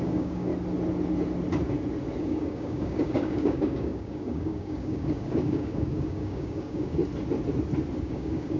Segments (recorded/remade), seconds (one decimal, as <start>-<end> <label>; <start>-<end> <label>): 0.0-0.5 remade; 0.5-2.2 recorded; 2.2-7.0 remade; 7.0-8.0 recorded; 8.0-8.6 remade